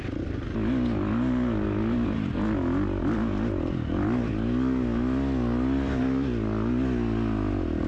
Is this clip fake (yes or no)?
no